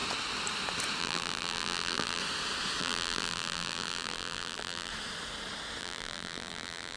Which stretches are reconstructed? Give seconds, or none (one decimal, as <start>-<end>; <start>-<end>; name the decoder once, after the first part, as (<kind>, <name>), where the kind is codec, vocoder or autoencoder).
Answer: 1.0-2.2 (vocoder, BigVGAN v2); 2.8-4.9; 5.8-7.0